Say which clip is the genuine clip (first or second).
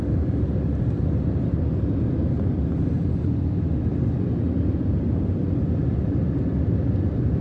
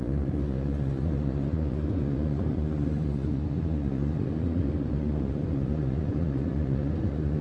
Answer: first